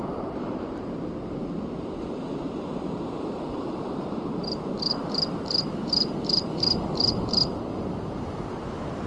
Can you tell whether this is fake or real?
fake